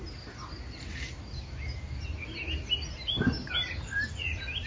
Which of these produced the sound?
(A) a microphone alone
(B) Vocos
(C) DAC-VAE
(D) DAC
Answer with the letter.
A